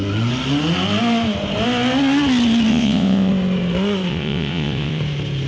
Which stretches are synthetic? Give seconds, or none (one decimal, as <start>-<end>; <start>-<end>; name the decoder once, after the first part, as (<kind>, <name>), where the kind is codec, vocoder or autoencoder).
2.7-3.3 (vocoder, WaveNeXt); 4.1-5.0